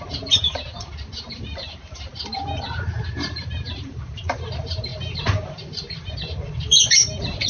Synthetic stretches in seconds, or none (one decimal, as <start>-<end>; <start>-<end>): 0.0-7.5